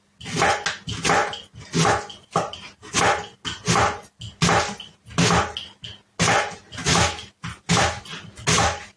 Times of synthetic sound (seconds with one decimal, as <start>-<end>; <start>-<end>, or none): none